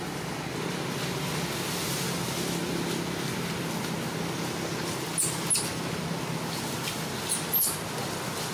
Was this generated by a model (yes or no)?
no